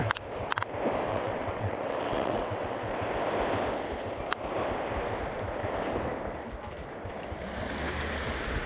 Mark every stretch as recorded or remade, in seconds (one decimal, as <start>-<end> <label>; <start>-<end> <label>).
0.0-1.1 recorded; 1.1-2.9 remade; 2.9-8.7 recorded